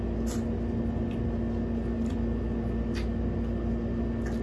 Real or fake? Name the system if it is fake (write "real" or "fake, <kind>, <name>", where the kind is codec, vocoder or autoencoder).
real